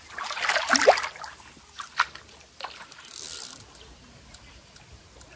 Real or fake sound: real